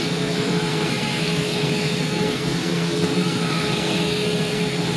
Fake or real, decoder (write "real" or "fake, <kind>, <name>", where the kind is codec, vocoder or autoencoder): fake, codec, SNAC